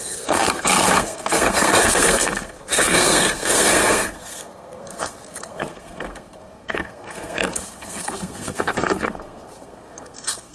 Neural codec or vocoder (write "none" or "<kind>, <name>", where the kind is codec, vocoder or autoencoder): codec, SNAC